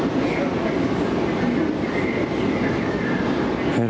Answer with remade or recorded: recorded